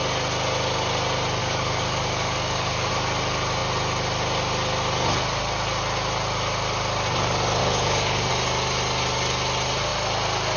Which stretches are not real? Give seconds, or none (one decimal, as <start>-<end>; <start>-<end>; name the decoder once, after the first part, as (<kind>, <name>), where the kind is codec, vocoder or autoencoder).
1.4-2.9 (codec, DAC); 7.6-8.3